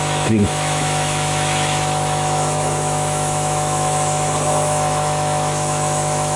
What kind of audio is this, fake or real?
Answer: fake